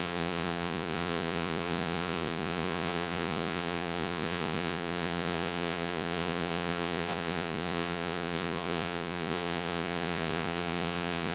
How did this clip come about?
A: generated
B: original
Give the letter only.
A